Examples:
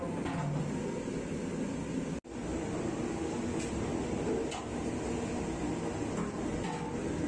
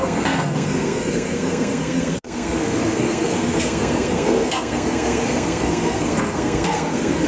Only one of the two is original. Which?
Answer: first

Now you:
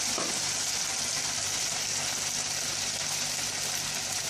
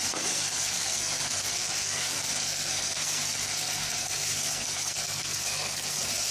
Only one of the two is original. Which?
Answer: first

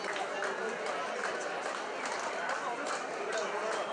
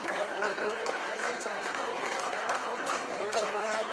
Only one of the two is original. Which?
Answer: first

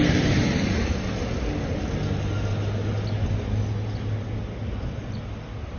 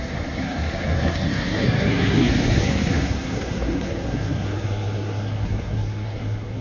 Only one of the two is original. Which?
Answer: first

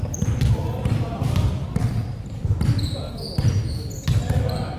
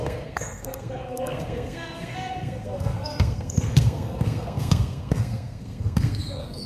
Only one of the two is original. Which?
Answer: first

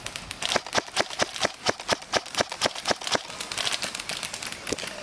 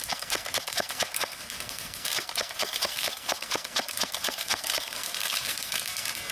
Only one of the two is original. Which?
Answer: first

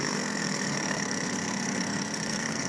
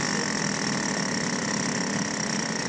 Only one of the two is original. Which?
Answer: second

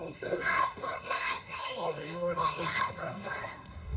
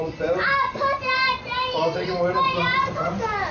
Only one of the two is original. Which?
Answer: second